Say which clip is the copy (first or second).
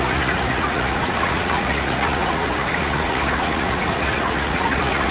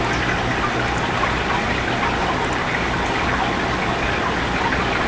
first